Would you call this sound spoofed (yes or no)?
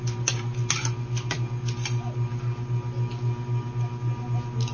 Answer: no